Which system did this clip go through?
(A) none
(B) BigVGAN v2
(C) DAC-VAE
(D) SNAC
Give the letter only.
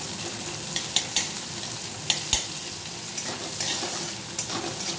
A